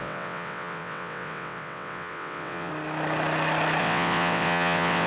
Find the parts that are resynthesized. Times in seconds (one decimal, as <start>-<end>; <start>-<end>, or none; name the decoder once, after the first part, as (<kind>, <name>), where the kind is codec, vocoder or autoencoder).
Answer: 0.0-2.7 (vocoder, WaveNeXt); 3.8-5.1